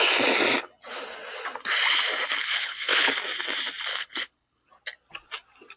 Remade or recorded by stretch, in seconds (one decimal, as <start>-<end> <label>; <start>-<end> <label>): 0.0-2.4 recorded; 2.4-3.1 remade; 3.1-3.9 recorded; 3.9-4.7 remade; 4.7-5.8 recorded